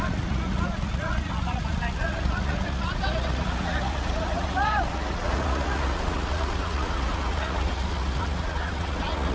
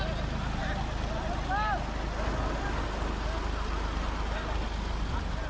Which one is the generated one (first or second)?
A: first